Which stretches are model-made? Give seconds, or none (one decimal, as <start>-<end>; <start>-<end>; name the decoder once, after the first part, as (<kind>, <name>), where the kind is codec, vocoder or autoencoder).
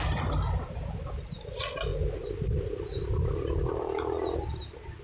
none